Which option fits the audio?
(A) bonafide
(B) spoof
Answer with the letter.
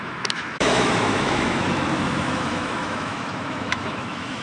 B